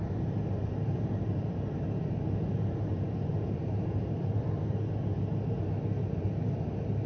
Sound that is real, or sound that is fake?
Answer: real